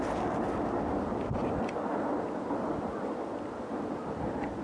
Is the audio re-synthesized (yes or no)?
no